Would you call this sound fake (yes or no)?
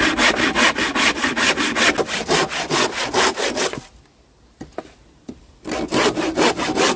no